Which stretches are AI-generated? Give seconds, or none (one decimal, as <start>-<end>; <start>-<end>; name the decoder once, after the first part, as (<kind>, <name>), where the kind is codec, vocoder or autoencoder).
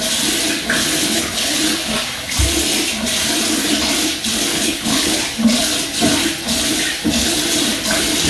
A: 1.0-1.6 (codec, HILCodec); 4.5-5.2